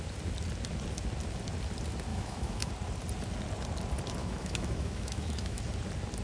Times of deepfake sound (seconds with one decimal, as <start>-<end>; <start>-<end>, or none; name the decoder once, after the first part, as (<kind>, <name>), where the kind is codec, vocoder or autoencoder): 2.1-2.7 (autoencoder, DAC-VAE); 4.2-5.6